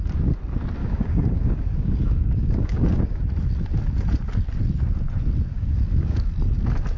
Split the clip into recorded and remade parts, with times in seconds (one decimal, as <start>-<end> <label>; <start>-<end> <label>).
0.0-0.8 recorded; 0.8-3.2 remade; 3.2-5.5 recorded; 5.5-6.3 remade; 6.3-7.0 recorded